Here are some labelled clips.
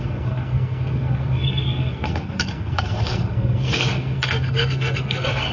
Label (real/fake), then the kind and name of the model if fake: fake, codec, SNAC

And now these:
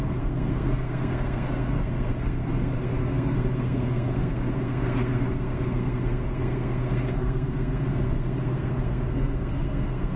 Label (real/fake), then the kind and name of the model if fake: fake, codec, SNAC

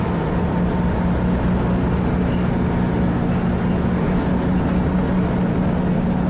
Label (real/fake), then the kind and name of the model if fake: real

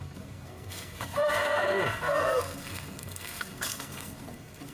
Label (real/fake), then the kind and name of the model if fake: fake, codec, SNAC